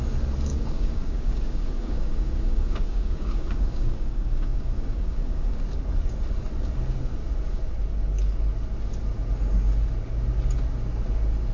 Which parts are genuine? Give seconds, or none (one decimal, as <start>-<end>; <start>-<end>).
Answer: 0.0-0.5; 5.6-11.5

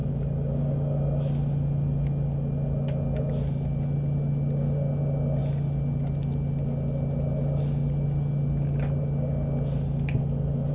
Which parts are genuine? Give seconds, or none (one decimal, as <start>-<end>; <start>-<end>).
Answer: 0.0-10.7

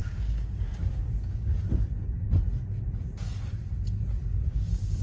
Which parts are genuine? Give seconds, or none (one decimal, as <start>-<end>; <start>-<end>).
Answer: 1.5-4.5

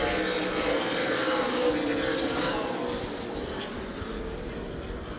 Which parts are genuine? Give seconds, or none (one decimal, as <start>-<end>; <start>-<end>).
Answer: 0.0-1.0; 1.7-2.1; 2.7-5.2